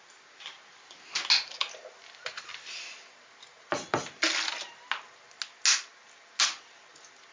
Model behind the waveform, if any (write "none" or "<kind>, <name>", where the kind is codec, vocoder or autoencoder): none